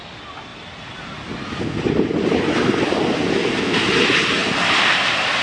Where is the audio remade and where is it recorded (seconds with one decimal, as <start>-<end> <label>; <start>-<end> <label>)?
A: 0.0-5.4 recorded